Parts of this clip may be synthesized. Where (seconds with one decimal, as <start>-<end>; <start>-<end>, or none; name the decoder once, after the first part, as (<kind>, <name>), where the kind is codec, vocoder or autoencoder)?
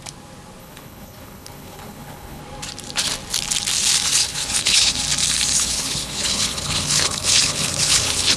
0.6-2.4 (codec, HILCodec); 4.2-5.0; 5.5-8.4